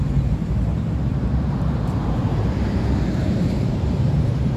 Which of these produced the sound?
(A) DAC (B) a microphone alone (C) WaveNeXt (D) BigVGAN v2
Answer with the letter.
D